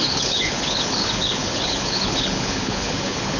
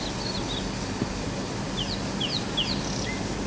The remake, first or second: first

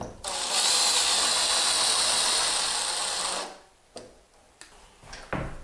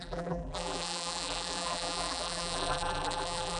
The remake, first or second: second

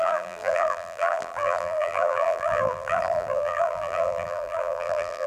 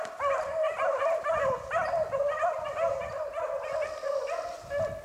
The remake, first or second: first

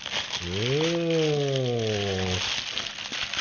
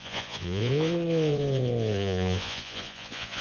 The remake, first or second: second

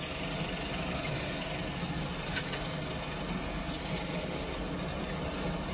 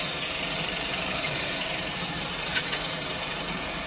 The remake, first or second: second